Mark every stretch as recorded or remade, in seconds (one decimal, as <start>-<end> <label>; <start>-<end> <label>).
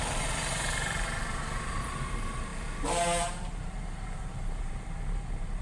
0.0-5.6 remade